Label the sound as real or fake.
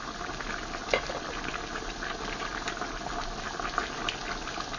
real